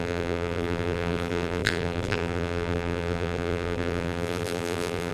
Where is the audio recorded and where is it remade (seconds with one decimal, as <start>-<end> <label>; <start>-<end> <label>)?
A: 0.0-5.1 remade